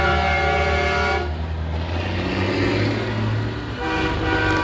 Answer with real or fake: real